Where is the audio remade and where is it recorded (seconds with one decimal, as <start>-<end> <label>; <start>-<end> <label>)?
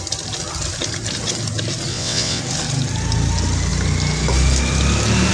0.0-1.9 recorded; 1.9-2.4 remade; 2.4-5.3 recorded